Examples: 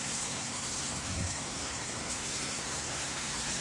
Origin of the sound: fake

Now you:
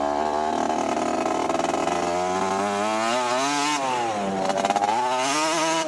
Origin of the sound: real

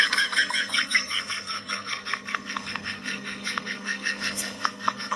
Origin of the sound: fake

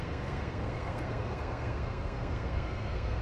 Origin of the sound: fake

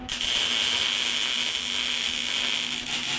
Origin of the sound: real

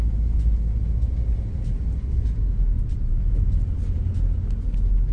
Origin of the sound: real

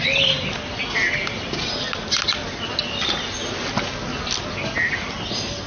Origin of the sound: real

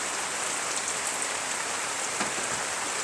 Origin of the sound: real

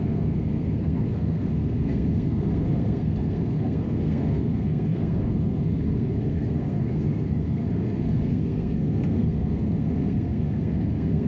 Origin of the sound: fake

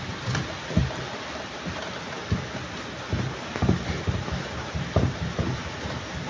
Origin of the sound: real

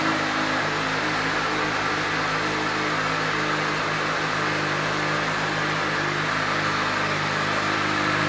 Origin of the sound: real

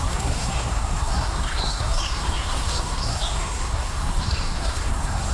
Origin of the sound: fake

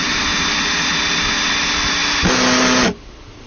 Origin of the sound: real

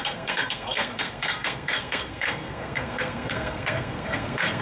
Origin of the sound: fake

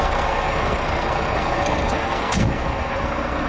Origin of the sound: fake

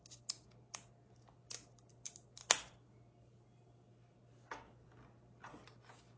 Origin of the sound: real